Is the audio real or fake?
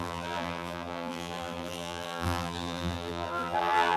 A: fake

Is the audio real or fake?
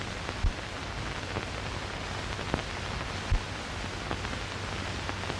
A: real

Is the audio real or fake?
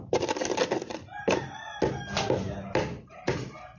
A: real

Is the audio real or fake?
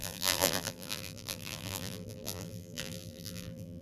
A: fake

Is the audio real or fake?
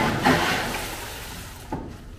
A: real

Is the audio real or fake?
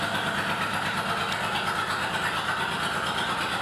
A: real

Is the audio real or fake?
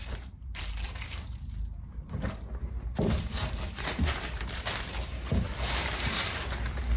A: fake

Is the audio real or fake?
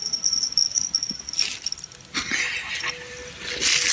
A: real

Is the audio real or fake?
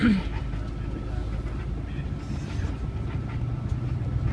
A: real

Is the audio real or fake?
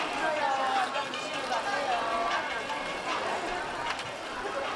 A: real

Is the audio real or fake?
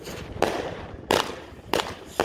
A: fake